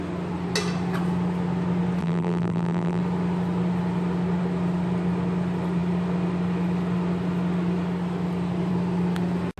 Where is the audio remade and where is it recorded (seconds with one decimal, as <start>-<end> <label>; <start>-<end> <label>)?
0.0-2.0 recorded; 2.0-3.0 remade; 3.0-9.6 recorded